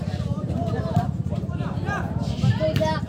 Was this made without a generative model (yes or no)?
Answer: no